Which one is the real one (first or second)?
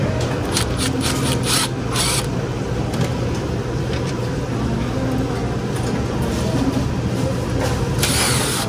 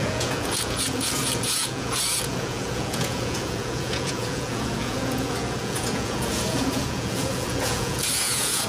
first